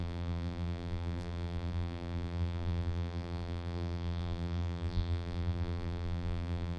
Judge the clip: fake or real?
fake